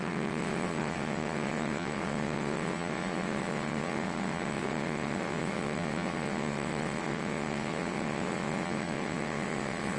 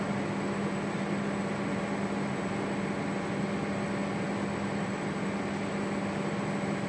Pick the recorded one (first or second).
second